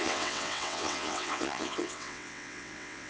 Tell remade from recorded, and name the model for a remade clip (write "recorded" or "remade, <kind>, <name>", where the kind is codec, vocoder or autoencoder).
remade, vocoder, WaveNeXt